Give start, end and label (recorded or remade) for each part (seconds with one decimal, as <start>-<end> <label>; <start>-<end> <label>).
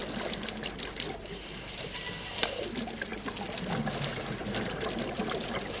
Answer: 0.0-1.3 remade; 1.3-4.4 recorded; 4.4-5.2 remade; 5.2-5.8 recorded